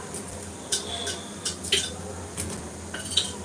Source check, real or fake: real